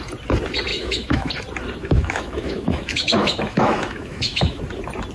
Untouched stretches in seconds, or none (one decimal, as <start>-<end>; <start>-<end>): 0.0-0.7; 1.3-1.8; 4.6-5.1